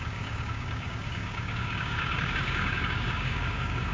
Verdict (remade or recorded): remade